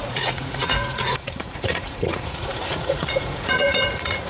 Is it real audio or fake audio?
fake